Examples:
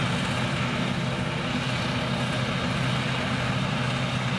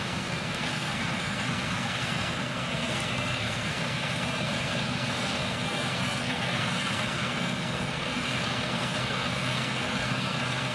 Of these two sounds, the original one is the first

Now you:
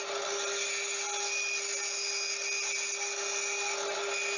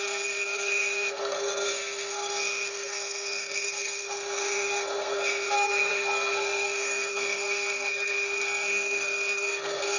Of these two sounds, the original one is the first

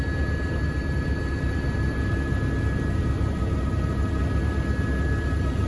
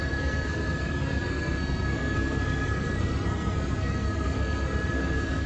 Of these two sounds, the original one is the first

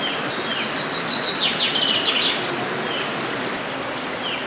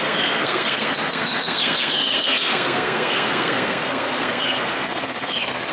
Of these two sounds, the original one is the first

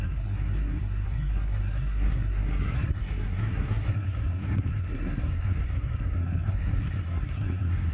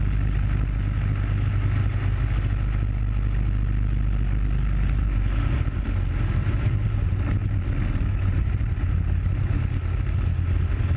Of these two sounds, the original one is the second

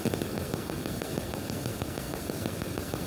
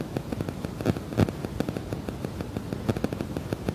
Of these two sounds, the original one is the second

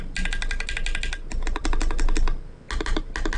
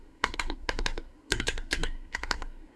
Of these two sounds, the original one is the first